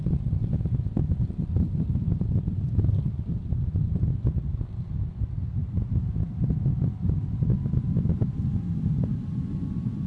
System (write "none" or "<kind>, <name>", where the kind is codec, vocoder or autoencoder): none